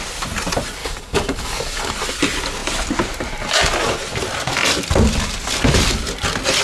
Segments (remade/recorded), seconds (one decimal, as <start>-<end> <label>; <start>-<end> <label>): 0.0-0.8 recorded; 0.8-1.9 remade; 1.9-6.6 recorded